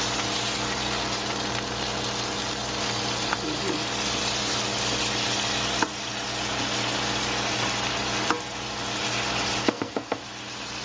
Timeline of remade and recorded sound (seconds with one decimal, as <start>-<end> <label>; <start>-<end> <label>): 0.0-9.6 recorded; 9.6-10.2 remade; 10.2-10.8 recorded